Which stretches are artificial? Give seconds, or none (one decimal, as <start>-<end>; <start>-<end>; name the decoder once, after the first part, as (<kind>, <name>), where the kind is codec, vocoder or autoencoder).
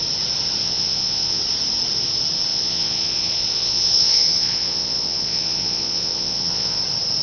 0.6-1.4 (vocoder, Vocos); 2.5-6.8